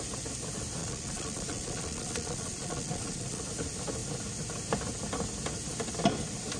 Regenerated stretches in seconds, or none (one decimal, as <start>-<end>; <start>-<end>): 0.8-3.4